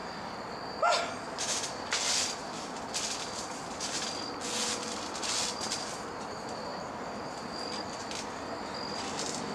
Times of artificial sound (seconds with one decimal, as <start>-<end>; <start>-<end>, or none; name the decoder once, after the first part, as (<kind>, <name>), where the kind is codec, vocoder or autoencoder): none